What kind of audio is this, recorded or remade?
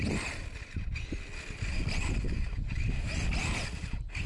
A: recorded